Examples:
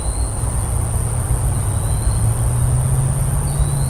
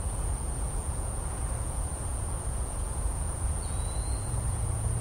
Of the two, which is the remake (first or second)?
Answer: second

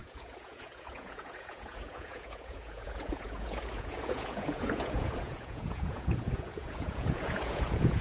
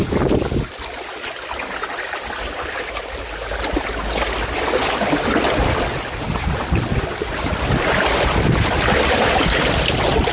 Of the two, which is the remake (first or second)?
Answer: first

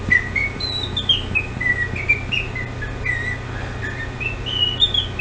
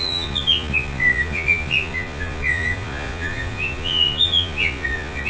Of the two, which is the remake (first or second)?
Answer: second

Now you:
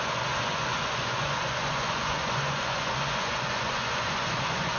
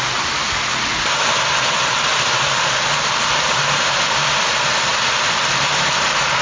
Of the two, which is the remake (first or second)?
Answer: first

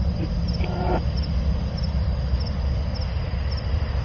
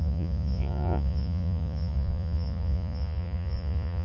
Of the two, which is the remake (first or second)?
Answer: second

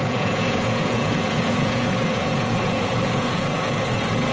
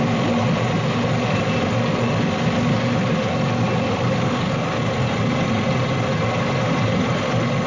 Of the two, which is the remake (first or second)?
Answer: first